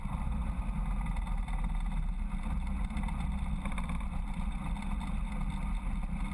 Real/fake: real